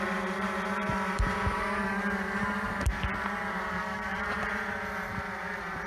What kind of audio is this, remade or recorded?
remade